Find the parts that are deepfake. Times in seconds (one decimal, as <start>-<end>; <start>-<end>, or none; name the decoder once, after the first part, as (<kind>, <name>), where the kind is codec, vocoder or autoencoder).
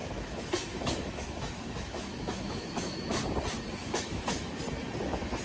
0.0-3.2 (autoencoder, DAC-VAE); 3.8-4.5